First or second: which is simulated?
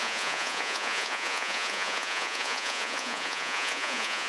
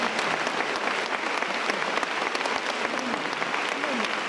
first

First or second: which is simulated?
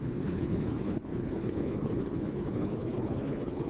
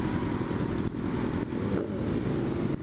first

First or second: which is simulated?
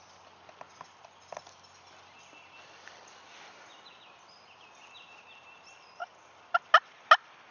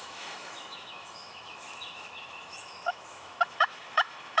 second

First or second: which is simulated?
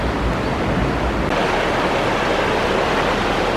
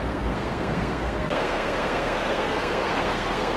second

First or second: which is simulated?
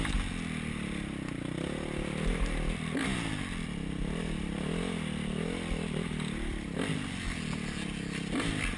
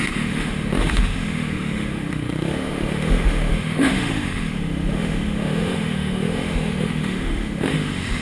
second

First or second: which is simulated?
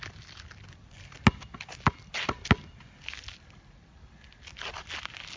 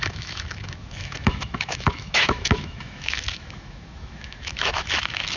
second